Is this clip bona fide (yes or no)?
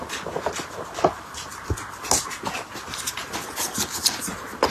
yes